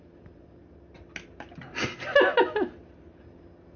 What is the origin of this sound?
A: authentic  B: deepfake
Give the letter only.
A